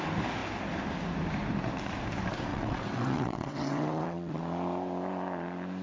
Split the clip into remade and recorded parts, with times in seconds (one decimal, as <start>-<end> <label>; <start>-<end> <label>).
0.0-2.5 recorded; 2.5-4.4 remade; 4.4-5.8 recorded